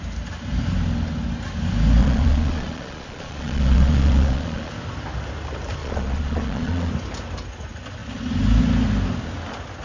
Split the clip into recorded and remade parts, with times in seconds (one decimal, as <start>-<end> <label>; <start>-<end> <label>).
0.0-2.0 recorded; 2.0-4.7 remade; 4.7-5.8 recorded; 5.8-6.9 remade; 6.9-9.8 recorded

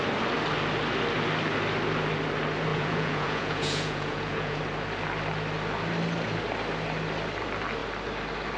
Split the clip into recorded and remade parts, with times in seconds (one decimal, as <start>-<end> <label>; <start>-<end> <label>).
0.0-2.7 recorded; 2.7-4.6 remade; 4.6-8.6 recorded

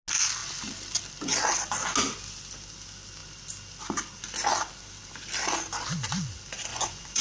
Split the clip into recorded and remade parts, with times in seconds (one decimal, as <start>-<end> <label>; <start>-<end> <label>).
0.0-6.7 recorded; 6.7-7.2 remade

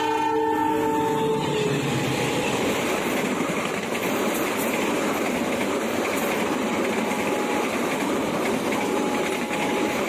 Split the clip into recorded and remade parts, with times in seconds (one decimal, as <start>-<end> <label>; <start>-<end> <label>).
0.0-10.1 recorded